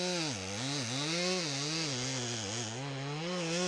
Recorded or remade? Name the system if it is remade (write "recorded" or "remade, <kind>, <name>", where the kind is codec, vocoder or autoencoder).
recorded